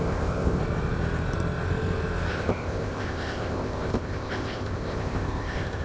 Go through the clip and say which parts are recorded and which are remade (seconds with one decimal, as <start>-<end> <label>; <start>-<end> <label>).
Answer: 0.0-0.6 remade; 0.6-2.3 recorded; 2.3-5.8 remade